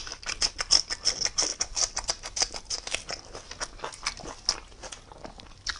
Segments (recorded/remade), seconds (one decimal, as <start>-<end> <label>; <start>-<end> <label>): 0.0-5.8 recorded